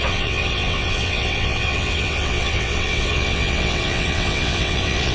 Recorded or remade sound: remade